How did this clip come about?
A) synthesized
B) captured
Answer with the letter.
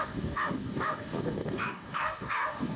A